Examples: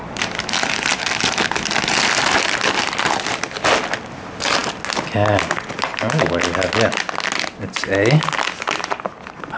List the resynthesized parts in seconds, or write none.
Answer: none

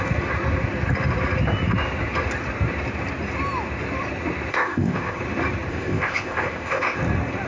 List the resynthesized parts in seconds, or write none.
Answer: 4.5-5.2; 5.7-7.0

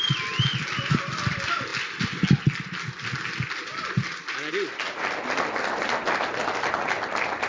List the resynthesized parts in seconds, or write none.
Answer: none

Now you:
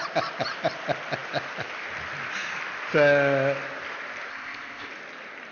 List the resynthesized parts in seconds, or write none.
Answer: 4.3-4.9

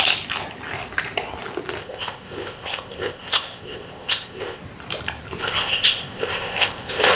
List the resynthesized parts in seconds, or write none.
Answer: 1.8-4.6; 5.4-7.1

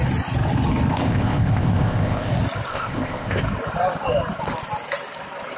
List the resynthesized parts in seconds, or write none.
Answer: 0.9-2.3; 2.7-3.4